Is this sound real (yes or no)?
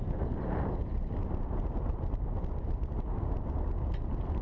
yes